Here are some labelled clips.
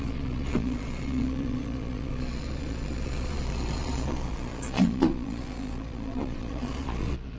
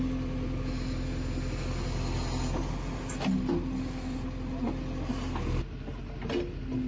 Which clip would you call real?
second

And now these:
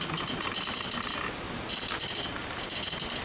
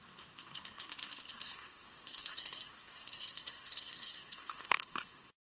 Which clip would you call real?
first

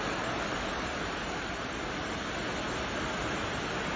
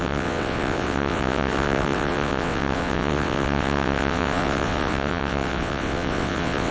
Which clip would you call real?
first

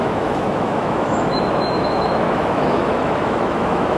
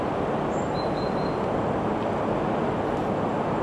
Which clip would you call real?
second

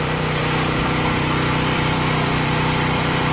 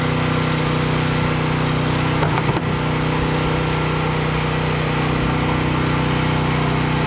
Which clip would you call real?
second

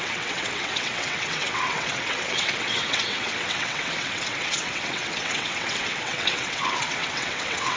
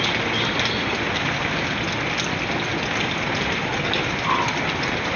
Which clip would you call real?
second